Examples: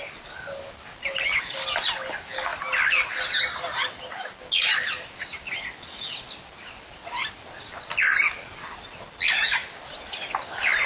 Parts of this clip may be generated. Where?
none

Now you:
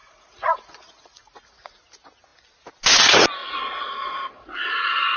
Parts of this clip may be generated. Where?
0.0-1.8; 3.4-5.2

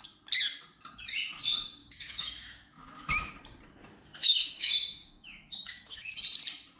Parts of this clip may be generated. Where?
1.8-3.3; 4.2-6.1

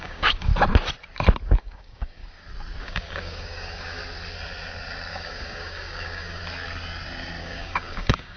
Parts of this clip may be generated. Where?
0.0-0.5; 1.6-2.2; 2.8-4.0; 5.1-6.4; 7.4-8.4

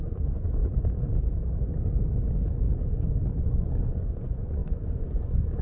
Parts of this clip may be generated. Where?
0.0-0.6; 3.4-5.6

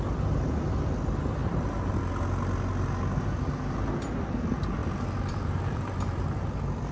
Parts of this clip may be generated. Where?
4.8-6.5

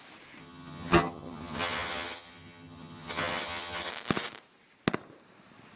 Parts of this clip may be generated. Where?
0.4-3.9